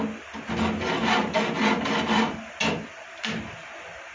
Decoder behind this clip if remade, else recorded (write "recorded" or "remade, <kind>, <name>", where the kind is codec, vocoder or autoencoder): recorded